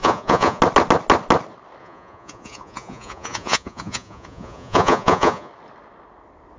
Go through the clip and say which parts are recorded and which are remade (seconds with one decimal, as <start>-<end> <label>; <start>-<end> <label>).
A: 0.0-0.6 remade; 0.6-1.8 recorded; 1.8-5.5 remade; 5.5-6.6 recorded